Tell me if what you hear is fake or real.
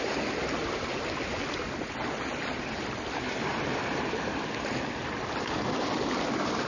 real